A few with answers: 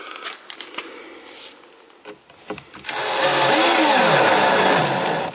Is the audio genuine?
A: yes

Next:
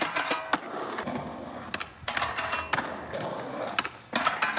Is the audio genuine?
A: yes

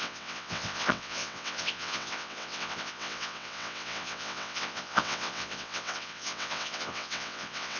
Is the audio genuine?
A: no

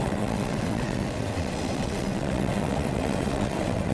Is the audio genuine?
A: no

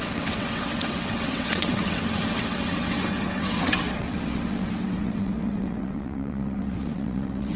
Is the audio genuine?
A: no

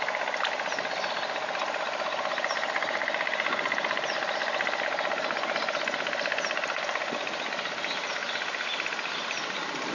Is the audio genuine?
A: yes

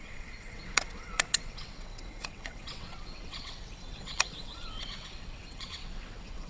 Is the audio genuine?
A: no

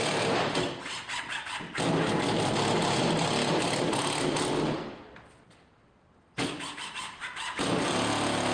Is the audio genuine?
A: yes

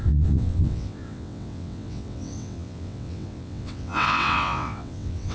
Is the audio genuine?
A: no